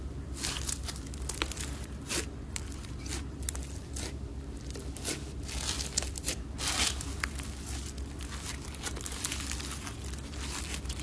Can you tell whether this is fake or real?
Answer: real